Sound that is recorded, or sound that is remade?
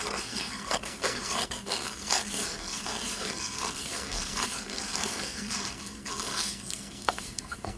remade